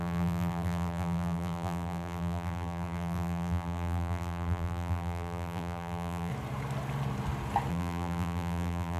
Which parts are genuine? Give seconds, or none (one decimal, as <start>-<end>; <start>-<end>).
6.3-7.7